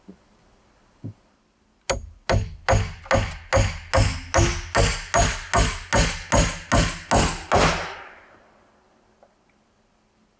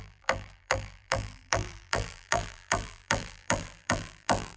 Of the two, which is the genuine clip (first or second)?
first